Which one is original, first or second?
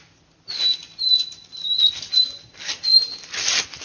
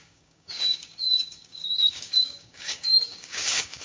first